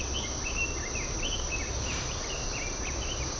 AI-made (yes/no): no